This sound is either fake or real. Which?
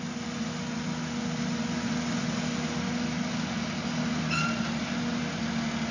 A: real